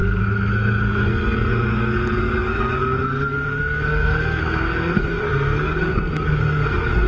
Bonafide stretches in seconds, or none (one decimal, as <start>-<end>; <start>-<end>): none